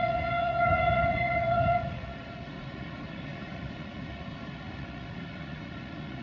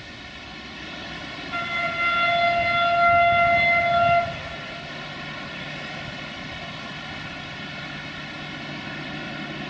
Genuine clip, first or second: second